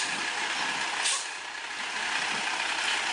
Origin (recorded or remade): recorded